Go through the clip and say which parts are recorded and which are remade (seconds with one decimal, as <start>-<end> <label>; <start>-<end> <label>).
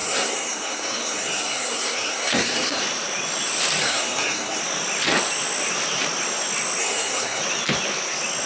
0.0-2.8 remade; 2.8-3.8 recorded; 3.8-4.6 remade; 4.6-6.8 recorded; 6.8-7.4 remade; 7.4-8.5 recorded